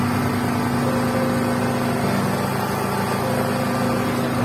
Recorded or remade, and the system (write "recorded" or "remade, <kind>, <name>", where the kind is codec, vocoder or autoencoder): recorded